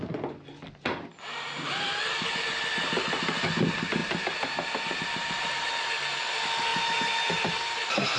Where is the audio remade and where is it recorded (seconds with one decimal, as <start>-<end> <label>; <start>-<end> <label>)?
0.0-4.0 recorded; 4.0-5.7 remade; 5.7-6.7 recorded; 6.7-8.2 remade